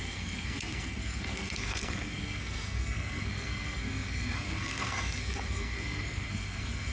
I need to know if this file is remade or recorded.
remade